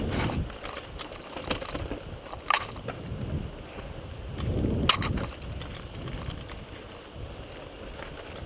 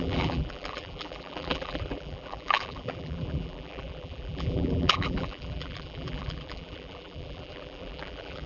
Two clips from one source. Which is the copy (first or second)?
second